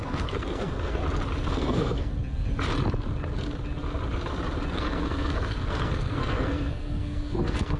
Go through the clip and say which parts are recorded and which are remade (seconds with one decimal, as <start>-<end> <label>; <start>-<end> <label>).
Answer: 0.0-1.0 remade; 1.0-1.5 recorded; 1.5-2.1 remade; 2.1-4.7 recorded; 4.7-7.8 remade